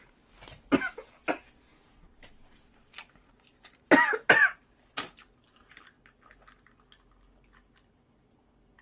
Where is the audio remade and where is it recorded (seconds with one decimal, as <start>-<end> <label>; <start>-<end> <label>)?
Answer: 0.0-8.8 recorded